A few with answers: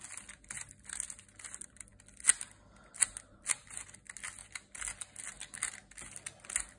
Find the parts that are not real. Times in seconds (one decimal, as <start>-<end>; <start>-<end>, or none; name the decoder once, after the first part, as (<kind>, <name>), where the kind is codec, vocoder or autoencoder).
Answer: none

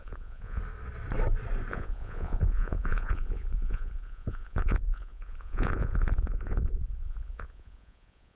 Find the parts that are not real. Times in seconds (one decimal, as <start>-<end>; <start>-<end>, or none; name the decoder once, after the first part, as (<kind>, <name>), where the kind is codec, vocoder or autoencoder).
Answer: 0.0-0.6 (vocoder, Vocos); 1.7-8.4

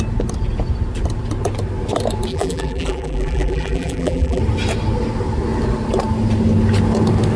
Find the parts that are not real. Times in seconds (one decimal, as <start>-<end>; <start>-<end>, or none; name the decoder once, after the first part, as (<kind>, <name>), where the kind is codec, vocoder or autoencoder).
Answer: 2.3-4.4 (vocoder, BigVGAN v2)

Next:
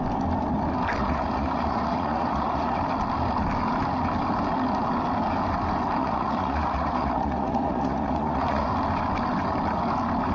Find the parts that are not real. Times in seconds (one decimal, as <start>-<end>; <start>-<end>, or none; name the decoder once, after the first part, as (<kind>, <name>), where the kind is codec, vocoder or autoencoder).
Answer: 1.0-2.8 (vocoder, Vocos); 6.0-8.7

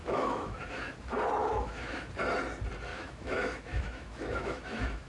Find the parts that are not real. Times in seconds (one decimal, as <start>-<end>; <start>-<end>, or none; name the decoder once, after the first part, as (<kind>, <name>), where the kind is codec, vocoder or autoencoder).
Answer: 0.0-0.9 (autoencoder, DAC-VAE); 1.4-2.1; 2.9-5.1

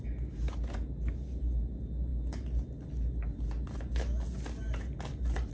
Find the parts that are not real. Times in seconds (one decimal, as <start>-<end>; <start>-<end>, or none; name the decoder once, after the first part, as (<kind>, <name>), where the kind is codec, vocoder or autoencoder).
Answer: none

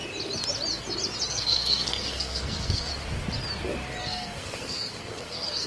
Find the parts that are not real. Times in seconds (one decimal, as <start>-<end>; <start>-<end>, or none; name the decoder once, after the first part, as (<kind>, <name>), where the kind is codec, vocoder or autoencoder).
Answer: 1.3-2.9 (codec, SNAC); 4.0-5.7